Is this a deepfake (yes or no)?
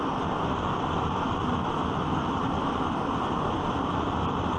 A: yes